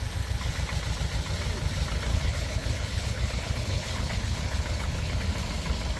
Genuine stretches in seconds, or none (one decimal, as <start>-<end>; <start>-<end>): 0.0-2.1; 5.2-6.0